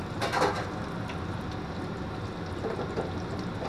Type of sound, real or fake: real